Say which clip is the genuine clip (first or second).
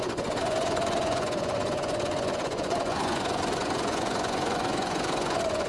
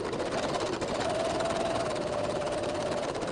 second